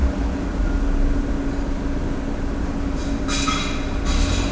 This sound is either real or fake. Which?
real